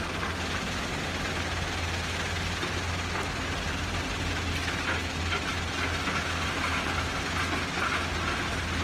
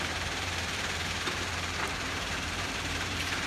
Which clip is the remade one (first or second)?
second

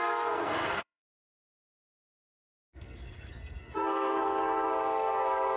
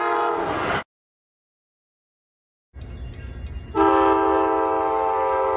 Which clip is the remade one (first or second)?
first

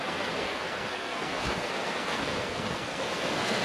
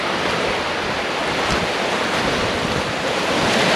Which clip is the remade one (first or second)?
first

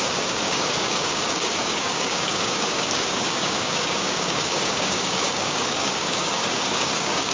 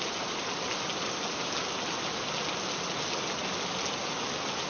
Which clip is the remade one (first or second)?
first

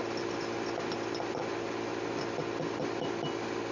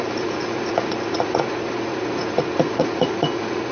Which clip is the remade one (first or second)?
second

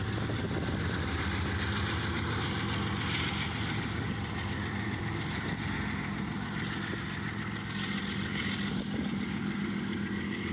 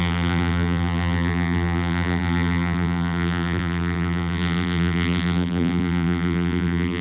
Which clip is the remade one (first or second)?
second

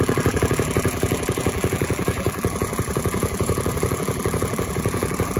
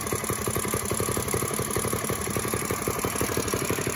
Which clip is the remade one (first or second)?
first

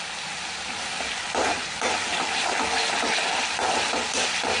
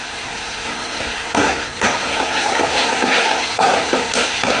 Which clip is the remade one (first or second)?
second